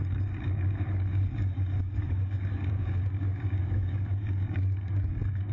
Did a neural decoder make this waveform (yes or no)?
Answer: yes